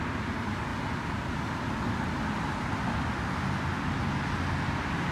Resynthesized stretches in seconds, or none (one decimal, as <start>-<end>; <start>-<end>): none